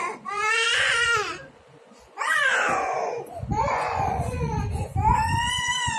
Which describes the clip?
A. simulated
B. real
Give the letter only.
A